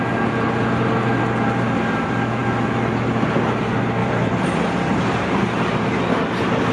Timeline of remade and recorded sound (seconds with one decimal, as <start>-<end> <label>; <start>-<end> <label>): 0.0-4.0 recorded; 4.0-5.2 remade; 5.2-6.7 recorded